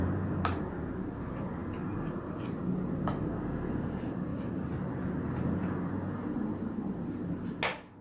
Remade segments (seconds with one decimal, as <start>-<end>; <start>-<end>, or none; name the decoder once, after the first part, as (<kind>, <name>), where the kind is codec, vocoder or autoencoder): 4.3-5.7 (vocoder, BigVGAN v2)